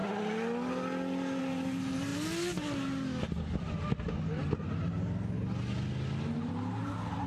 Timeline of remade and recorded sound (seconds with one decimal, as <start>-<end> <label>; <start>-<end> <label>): 0.0-1.4 recorded; 1.4-2.1 remade; 2.1-6.5 recorded; 6.5-7.3 remade